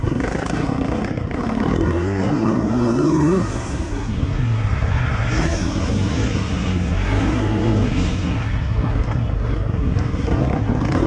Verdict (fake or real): fake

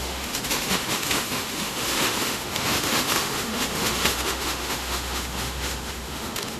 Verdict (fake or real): fake